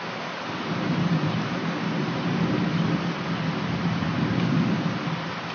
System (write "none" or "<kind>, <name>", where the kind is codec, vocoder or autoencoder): none